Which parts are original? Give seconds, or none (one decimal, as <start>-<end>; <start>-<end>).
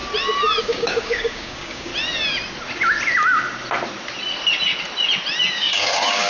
0.0-0.6; 1.9-5.5